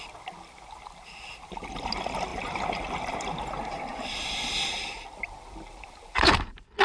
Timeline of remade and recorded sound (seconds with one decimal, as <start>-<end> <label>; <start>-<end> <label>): 0.0-6.8 recorded